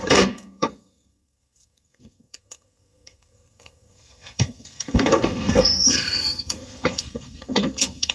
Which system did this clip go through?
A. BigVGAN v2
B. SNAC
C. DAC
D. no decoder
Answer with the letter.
B